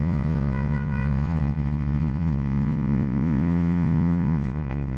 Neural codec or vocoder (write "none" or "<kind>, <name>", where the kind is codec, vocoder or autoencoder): vocoder, Vocos